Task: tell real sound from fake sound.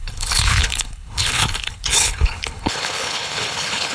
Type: fake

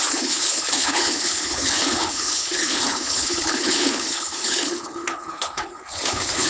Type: fake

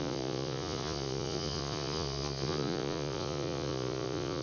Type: fake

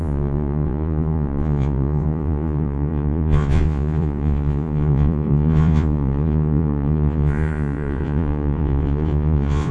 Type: fake